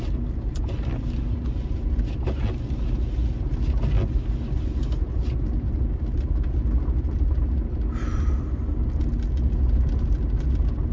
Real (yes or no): yes